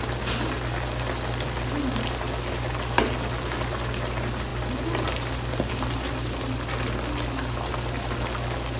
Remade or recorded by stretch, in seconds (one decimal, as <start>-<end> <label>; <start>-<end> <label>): 0.0-8.8 recorded